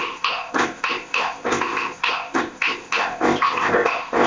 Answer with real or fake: fake